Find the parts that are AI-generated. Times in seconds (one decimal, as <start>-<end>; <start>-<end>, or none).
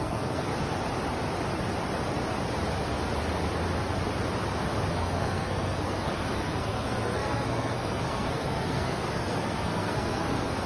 0.0-0.5; 4.9-10.7